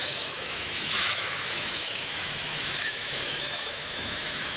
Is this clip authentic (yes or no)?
no